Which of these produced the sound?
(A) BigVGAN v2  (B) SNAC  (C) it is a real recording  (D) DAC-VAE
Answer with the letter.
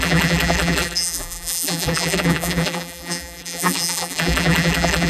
A